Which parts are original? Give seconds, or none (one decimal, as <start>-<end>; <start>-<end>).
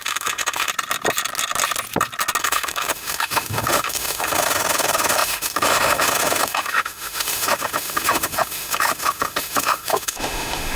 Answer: 0.7-2.4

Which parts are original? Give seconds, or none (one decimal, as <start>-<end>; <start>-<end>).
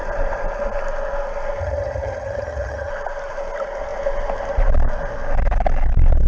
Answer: 0.0-1.6; 2.9-6.3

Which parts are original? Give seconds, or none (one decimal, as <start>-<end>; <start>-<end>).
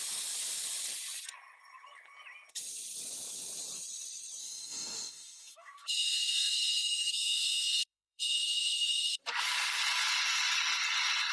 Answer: 0.0-4.4; 9.2-11.3